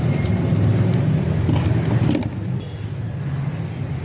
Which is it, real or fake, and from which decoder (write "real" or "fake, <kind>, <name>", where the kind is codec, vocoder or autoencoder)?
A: real